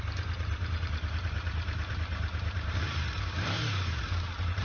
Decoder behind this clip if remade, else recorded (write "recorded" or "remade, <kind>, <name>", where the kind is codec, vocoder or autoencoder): remade, vocoder, BigVGAN v2